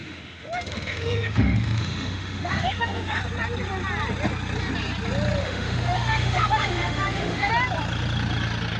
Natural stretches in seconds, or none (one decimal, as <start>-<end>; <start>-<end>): 3.2-5.4; 7.5-8.8